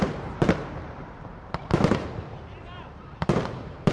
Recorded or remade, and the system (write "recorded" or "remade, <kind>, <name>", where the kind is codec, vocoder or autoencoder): remade, vocoder, BigVGAN v2